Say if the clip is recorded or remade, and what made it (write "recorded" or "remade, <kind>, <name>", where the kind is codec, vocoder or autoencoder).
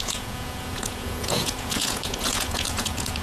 remade, vocoder, Vocos